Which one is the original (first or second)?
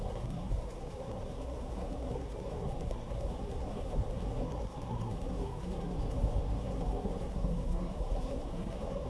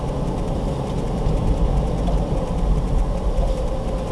second